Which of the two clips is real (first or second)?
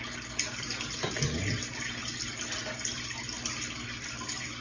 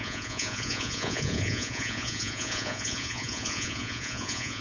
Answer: first